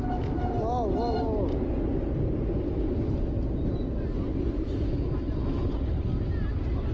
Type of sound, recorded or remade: recorded